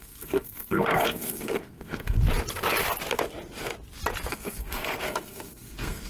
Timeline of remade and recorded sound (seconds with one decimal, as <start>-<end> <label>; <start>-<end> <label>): 0.0-2.2 remade; 2.2-4.3 recorded; 4.3-6.1 remade